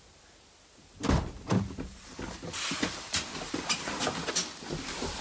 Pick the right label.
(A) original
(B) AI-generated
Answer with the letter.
A